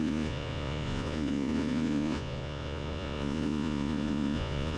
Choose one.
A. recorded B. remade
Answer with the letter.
B